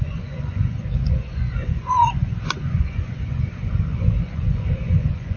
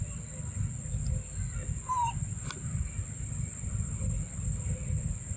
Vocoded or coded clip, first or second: first